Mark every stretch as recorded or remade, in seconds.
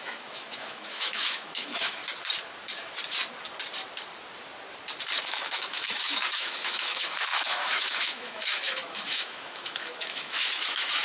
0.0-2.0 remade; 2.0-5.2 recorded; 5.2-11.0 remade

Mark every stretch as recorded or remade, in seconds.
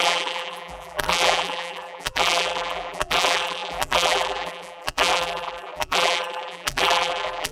0.0-7.5 remade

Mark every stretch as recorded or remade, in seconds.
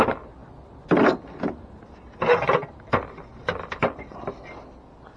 0.0-5.2 recorded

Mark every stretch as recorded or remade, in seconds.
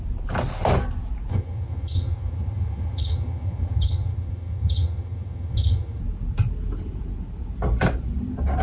0.0-1.3 recorded; 1.3-6.0 remade; 6.0-8.6 recorded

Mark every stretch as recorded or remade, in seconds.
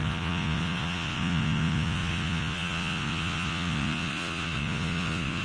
0.0-5.4 remade